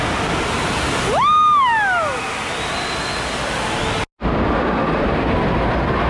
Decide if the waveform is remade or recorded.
recorded